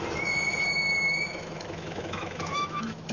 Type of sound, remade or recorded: remade